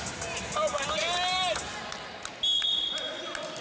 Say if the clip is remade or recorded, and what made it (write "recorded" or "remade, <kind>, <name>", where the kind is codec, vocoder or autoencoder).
recorded